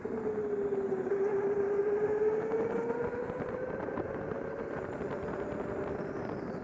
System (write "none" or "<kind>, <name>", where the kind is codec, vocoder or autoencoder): none